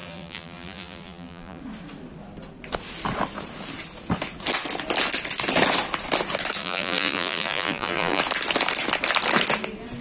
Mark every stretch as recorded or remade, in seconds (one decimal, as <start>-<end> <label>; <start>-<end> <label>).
0.0-1.6 remade; 1.6-6.6 recorded; 6.6-8.2 remade; 8.2-10.0 recorded